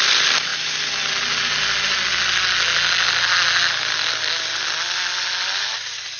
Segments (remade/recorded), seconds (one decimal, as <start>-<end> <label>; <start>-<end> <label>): 0.0-6.2 recorded

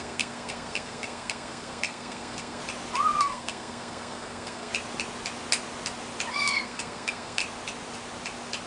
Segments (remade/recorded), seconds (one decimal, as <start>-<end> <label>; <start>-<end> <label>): 0.0-2.6 remade; 2.6-3.2 recorded; 3.2-4.7 remade; 4.7-6.3 recorded; 6.3-7.4 remade; 7.4-8.7 recorded

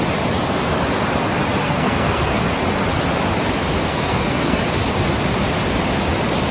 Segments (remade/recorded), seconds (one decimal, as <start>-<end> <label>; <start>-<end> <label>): 0.0-1.6 recorded; 1.6-2.4 remade; 2.4-3.9 recorded; 3.9-4.6 remade; 4.6-6.5 recorded